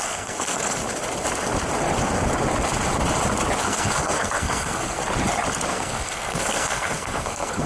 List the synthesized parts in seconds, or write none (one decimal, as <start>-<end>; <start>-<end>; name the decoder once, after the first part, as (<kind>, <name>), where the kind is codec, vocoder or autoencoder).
0.0-0.8 (codec, SNAC); 3.6-5.0; 5.7-7.7